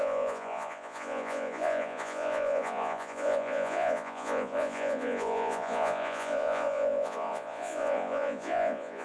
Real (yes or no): no